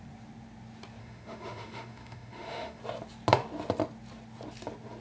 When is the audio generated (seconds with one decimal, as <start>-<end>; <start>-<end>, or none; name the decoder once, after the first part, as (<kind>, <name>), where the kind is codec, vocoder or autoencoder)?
1.0-2.8 (autoencoder, DAC-VAE)